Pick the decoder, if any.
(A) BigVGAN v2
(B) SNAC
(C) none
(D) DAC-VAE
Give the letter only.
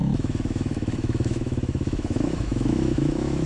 D